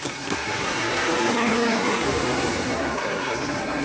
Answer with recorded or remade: remade